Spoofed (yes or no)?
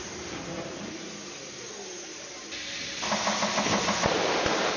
no